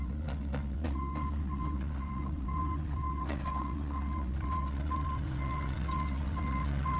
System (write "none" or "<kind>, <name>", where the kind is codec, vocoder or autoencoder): vocoder, WaveNeXt